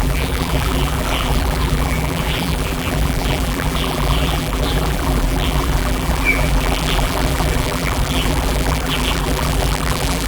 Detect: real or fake fake